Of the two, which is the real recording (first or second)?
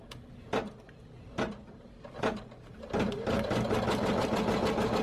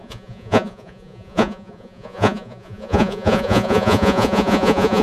first